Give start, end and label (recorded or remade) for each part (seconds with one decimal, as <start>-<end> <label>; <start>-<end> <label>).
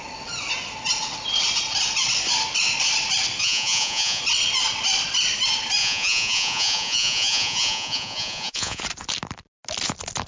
0.0-3.4 recorded; 3.4-4.2 remade; 4.2-5.8 recorded; 5.8-8.8 remade; 8.8-10.3 recorded